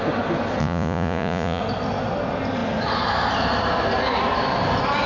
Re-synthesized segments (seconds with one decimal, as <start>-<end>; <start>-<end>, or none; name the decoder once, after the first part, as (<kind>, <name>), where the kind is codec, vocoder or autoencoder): 0.6-1.6 (vocoder, Vocos)